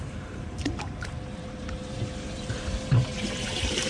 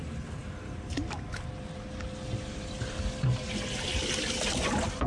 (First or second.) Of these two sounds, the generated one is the first